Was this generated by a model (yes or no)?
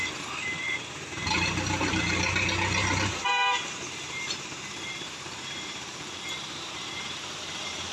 yes